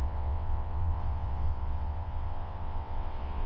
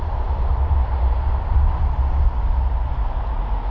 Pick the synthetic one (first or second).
first